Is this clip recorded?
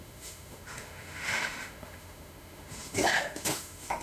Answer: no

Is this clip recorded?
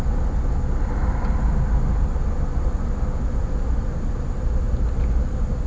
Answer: yes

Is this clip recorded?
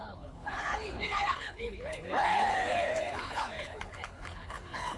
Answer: no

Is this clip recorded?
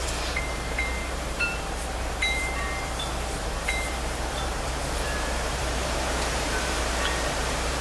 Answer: no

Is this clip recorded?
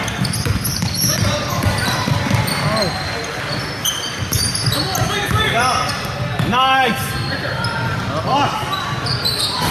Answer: yes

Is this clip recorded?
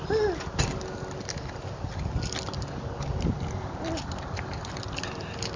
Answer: yes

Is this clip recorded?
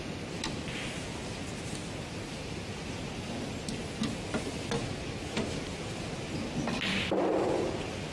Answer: yes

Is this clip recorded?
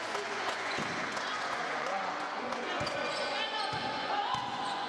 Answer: no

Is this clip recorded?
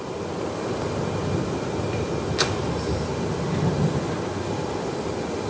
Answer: yes